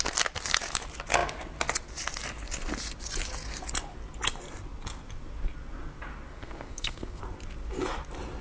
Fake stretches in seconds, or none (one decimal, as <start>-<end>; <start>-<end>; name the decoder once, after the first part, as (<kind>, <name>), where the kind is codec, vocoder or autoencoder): 6.3-7.2 (codec, SNAC)